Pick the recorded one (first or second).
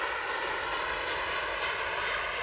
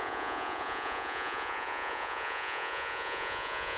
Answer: first